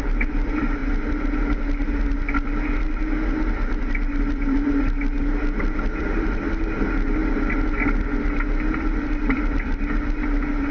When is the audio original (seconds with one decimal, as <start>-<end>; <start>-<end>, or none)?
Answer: 0.8-4.2; 7.2-8.8